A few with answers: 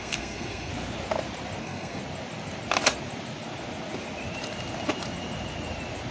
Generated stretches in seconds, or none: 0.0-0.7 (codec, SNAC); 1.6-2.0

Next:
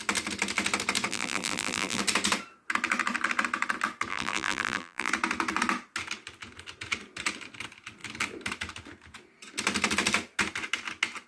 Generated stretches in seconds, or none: 1.1-2.0 (vocoder, BigVGAN v2); 4.1-5.1

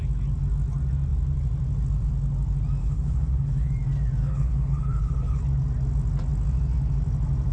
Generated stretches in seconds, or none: 2.8-3.7 (codec, HILCodec); 4.2-5.4

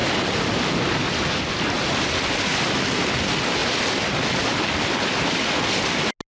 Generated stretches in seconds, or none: none

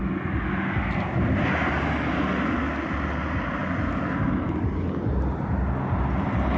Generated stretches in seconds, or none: none

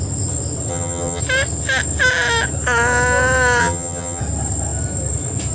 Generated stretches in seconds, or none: 0.7-1.2 (vocoder, HiFi-GAN); 3.6-4.2

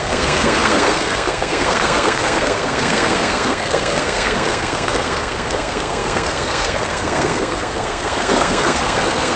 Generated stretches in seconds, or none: 0.0-9.4 (codec, SNAC)

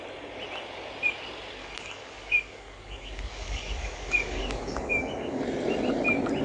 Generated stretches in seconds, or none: 1.6-5.4 (codec, DAC)